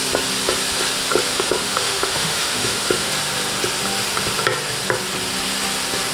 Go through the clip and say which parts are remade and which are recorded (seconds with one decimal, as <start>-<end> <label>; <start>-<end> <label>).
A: 0.0-1.3 recorded; 1.3-3.1 remade; 3.1-6.1 recorded